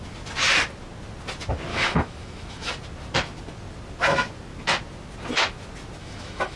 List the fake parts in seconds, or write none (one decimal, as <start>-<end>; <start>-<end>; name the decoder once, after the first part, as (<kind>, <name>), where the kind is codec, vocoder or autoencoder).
1.7-2.7 (autoencoder, DAC-VAE); 6.0-6.6